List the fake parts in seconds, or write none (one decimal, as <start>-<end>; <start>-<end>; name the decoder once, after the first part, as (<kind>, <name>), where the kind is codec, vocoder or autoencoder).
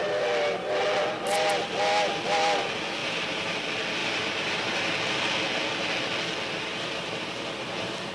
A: 3.0-3.6 (vocoder, BigVGAN v2); 4.0-4.9; 6.7-7.5